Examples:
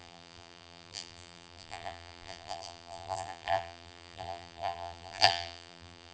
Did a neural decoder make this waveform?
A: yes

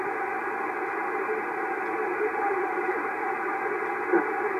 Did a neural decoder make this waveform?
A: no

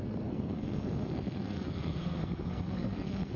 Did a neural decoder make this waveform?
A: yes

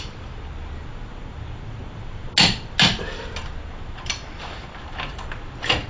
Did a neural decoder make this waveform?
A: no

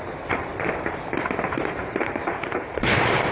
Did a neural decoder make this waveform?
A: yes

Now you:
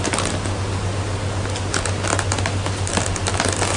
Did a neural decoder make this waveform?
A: no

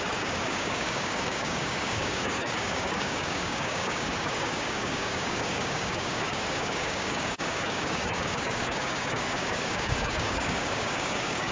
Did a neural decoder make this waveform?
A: yes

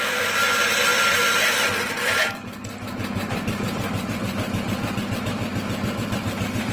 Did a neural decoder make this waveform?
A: yes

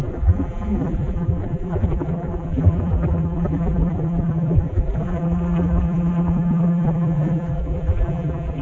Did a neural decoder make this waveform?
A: yes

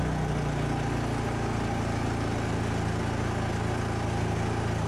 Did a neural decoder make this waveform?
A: no